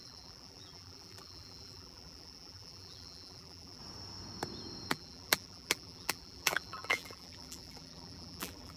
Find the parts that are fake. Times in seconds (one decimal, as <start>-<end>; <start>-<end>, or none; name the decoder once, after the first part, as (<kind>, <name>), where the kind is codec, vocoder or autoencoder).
0.0-3.8 (vocoder, BigVGAN v2); 4.9-8.8